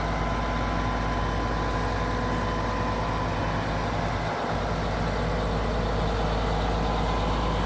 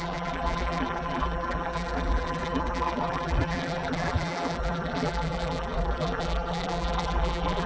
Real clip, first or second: first